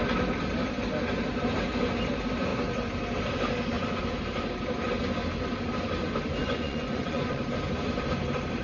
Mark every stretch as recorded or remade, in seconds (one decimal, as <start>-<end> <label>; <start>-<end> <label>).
0.0-6.4 recorded; 6.4-7.4 remade; 7.4-8.6 recorded